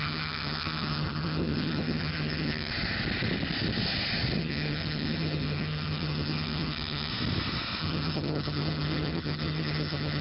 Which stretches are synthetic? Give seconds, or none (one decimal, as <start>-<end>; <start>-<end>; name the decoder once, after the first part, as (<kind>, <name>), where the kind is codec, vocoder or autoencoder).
0.0-2.7 (vocoder, HiFi-GAN); 4.4-7.1; 7.8-10.2